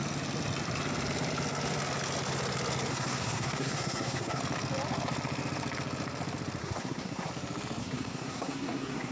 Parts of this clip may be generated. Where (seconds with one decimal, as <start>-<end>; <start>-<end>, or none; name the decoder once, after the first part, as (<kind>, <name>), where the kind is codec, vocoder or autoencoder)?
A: 2.9-4.4 (codec, SNAC); 6.6-7.3; 7.8-9.1